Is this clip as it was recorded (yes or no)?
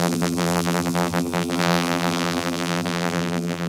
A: no